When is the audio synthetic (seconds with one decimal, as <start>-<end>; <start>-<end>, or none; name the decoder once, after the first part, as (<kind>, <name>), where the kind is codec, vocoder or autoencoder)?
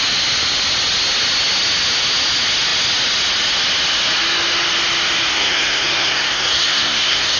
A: 5.3-7.4 (codec, SNAC)